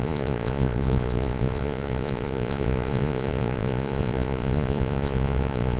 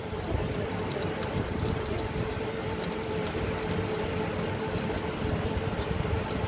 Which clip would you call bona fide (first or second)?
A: second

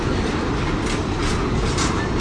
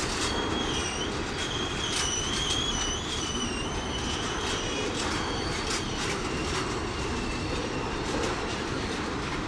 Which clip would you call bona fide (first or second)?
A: first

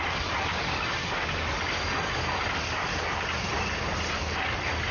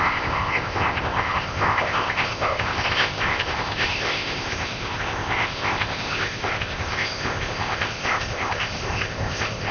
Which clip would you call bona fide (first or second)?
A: first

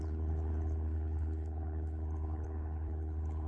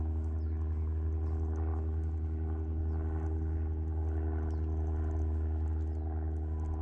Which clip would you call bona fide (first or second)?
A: second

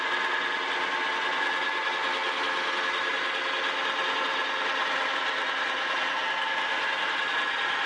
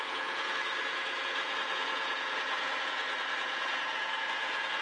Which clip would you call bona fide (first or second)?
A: first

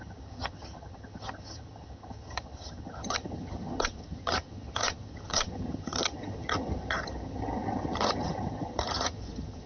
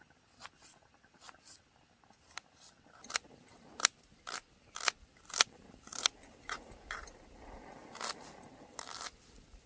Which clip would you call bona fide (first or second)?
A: second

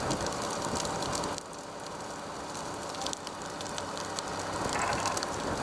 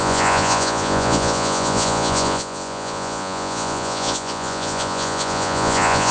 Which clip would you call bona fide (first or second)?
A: first